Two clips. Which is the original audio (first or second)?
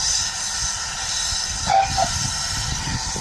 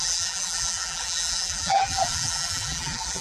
first